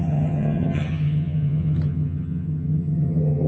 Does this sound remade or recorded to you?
remade